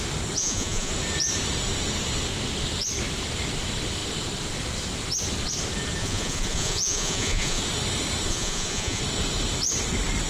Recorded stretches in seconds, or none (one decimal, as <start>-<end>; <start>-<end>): 0.0-0.4; 0.9-6.0; 7.6-8.3; 9.0-10.3